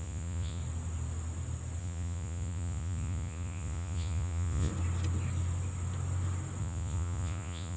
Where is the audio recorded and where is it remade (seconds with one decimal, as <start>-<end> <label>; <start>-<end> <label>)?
0.0-0.6 remade; 0.6-1.8 recorded; 1.8-4.7 remade; 4.7-6.6 recorded; 6.6-7.8 remade